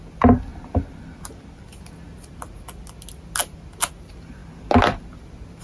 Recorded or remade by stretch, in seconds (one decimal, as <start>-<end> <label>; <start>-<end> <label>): 0.0-5.6 recorded